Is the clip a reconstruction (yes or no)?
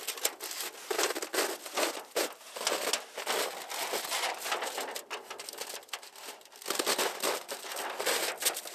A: no